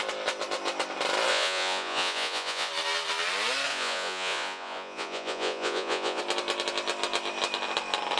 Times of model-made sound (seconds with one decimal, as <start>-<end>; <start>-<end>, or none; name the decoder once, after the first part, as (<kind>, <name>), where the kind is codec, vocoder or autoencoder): 1.3-2.7 (vocoder, Vocos); 3.7-6.2